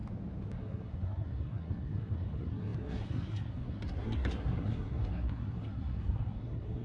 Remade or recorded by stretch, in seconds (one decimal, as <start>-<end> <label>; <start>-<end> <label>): 0.0-0.6 recorded; 0.6-6.8 remade